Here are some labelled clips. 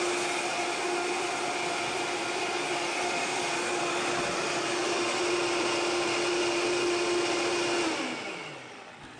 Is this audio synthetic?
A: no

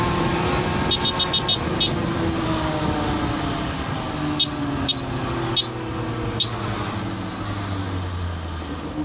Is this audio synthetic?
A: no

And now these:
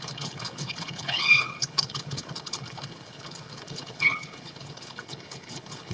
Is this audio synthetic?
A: yes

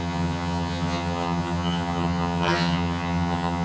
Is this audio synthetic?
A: yes